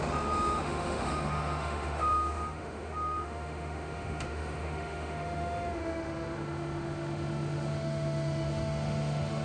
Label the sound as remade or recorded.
remade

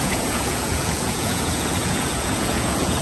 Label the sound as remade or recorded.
remade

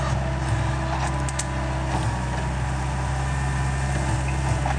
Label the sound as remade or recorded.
recorded